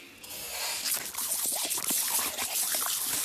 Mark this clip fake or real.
real